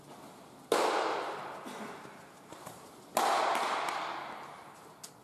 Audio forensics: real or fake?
real